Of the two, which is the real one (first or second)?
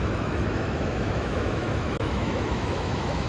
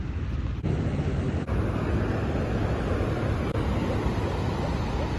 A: second